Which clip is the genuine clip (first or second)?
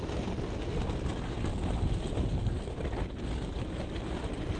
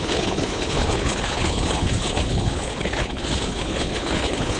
first